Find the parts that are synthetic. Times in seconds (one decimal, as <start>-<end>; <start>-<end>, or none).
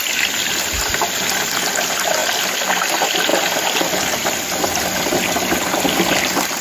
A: none